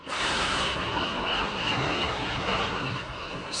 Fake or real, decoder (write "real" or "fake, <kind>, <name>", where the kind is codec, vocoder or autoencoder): fake, codec, SNAC